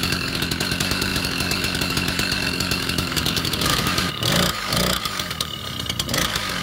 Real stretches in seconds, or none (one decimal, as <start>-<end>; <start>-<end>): 5.6-6.1